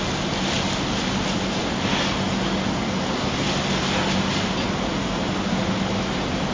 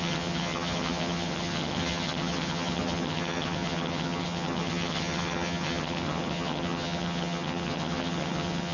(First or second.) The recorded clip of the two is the first